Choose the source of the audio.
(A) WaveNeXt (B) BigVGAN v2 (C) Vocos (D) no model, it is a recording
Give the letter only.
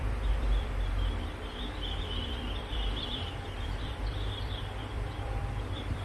B